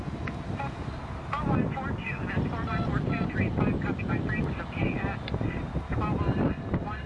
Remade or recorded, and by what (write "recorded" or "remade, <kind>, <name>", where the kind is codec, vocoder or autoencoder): recorded